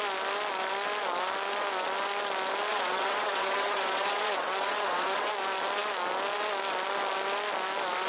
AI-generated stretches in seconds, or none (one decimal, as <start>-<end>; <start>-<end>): 2.7-5.3